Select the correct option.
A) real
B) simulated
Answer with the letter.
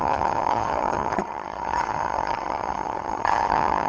B